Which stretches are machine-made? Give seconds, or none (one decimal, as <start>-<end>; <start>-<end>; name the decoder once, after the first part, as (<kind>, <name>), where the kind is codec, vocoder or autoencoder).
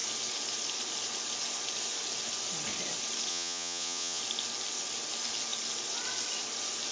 3.3-4.2 (vocoder, Vocos)